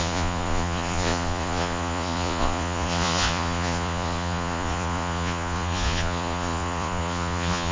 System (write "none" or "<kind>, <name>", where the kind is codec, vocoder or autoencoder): vocoder, Vocos